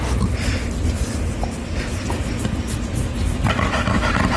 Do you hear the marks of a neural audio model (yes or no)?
no